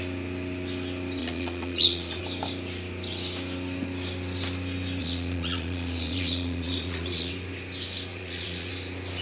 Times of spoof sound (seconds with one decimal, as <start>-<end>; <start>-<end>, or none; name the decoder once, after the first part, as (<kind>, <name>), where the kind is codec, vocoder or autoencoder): 1.2-2.2 (vocoder, Vocos); 5.0-7.3; 8.1-8.7